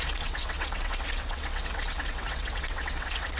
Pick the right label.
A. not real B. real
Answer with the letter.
A